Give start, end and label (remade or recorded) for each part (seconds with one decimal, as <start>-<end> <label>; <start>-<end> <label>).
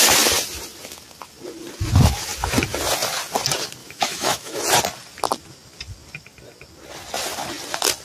0.0-3.8 recorded; 3.8-4.6 remade; 4.6-8.0 recorded